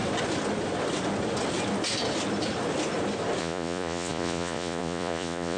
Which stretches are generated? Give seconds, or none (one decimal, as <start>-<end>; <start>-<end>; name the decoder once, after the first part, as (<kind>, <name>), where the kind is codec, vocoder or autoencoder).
3.4-5.6 (vocoder, Vocos)